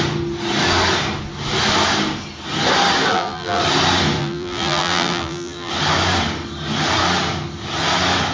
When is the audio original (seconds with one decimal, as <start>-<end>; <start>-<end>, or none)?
0.0-3.1; 3.6-4.2; 5.7-8.3